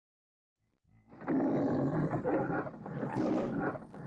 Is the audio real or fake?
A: real